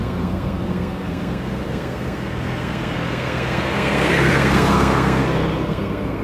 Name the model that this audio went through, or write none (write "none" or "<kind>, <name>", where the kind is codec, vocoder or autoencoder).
codec, SNAC